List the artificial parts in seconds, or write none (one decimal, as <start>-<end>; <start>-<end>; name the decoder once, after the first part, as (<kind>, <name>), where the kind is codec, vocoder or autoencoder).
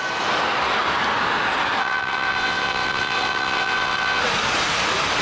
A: 1.8-4.2 (vocoder, WaveNeXt)